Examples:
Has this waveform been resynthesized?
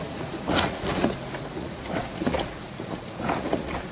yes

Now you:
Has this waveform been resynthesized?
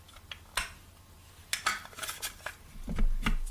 no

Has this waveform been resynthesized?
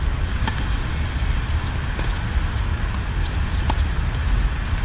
no